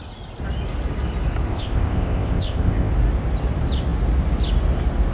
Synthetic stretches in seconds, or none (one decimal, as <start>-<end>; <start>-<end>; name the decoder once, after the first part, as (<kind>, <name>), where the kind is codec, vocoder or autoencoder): 1.5-2.9 (codec, ZipCodec)